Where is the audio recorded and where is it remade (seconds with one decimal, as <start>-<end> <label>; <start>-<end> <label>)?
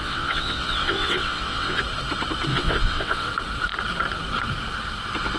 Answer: 0.0-1.8 remade; 1.8-2.5 recorded; 2.5-3.3 remade; 3.3-5.4 recorded